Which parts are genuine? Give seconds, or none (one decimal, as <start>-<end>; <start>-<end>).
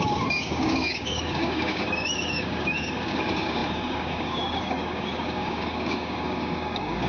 none